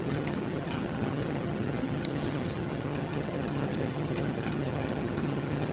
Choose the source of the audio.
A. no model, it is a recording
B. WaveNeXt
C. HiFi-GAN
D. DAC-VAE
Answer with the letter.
C